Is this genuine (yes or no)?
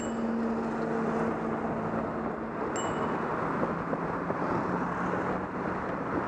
yes